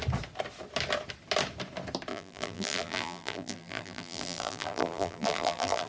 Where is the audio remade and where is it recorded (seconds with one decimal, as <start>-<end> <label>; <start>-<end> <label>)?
0.0-2.1 recorded; 2.1-5.9 remade